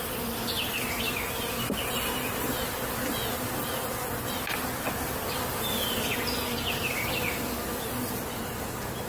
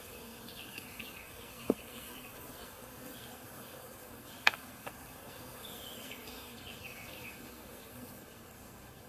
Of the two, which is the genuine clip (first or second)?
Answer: first